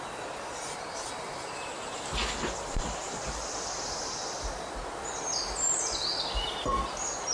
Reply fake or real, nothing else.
real